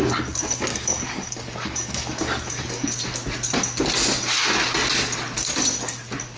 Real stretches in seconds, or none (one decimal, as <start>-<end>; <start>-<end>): 0.0-0.7; 2.9-6.4